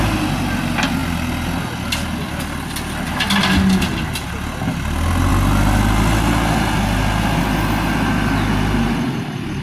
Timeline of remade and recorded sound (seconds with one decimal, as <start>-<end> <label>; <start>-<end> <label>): 0.0-9.6 recorded

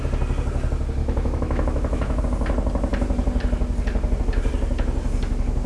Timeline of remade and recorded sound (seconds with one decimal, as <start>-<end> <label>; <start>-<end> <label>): 0.0-1.0 recorded; 1.0-2.2 remade; 2.2-5.7 recorded

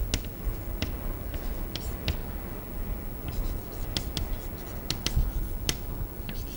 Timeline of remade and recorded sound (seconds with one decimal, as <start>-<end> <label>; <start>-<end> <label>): 0.0-6.6 recorded

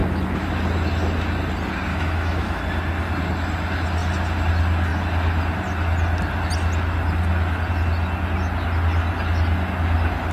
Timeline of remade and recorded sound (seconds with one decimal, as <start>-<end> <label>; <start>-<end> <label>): 0.0-0.5 remade; 0.5-1.9 recorded; 1.9-2.6 remade; 2.6-10.3 recorded

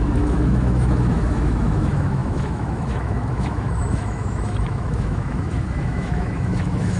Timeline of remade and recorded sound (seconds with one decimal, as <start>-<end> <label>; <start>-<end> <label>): 0.0-7.0 remade

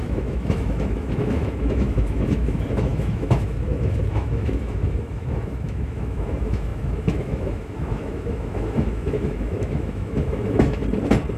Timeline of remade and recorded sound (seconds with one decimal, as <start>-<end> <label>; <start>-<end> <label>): 0.0-10.8 remade; 10.8-11.4 recorded

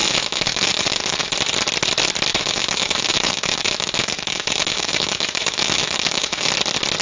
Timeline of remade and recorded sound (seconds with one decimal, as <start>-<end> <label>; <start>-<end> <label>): 0.0-1.3 remade; 1.3-2.3 recorded; 2.3-6.5 remade; 6.5-7.0 recorded

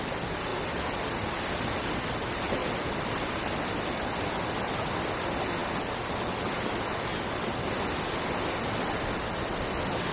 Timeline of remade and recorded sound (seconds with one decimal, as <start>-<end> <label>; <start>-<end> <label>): 0.0-10.1 recorded